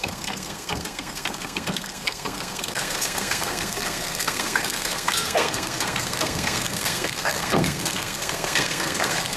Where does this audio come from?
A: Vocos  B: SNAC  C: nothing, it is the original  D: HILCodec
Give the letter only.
B